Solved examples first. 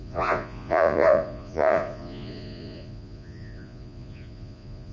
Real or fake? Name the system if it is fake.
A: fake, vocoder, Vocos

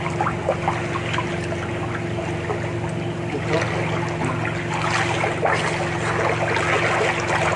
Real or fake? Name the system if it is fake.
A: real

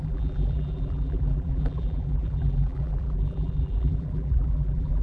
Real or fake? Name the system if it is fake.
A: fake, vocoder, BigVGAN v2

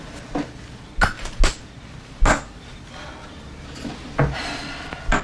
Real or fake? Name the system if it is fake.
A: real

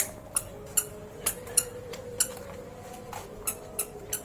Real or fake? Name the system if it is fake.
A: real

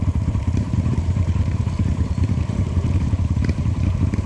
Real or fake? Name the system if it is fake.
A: fake, vocoder, BigVGAN v2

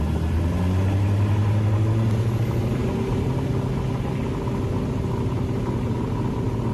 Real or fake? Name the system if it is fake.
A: real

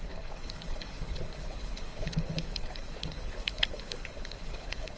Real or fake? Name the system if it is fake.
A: fake, codec, HILCodec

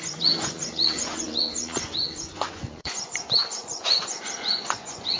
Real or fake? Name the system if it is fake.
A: fake, vocoder, Vocos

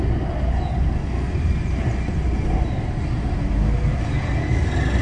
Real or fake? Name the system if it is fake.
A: real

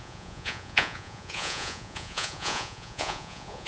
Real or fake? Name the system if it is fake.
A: fake, vocoder, Vocos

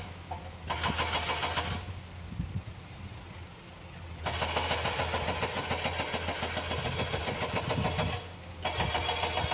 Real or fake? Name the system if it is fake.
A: real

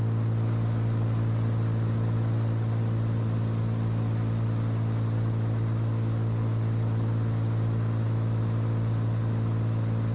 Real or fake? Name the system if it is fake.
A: real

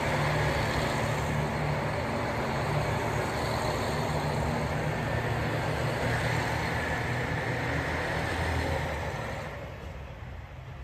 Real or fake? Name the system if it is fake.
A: real